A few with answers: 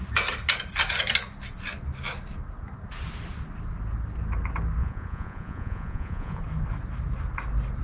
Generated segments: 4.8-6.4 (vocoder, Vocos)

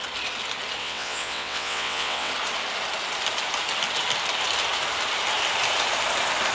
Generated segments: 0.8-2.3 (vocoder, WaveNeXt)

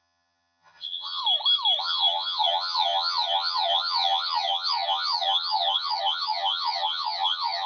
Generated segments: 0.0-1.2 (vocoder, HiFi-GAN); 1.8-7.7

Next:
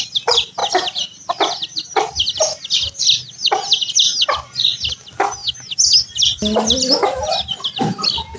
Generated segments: none